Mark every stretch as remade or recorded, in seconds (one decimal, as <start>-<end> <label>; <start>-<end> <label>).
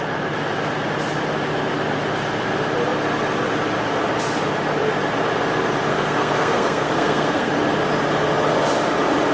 0.0-5.9 recorded; 5.9-7.5 remade; 7.5-9.3 recorded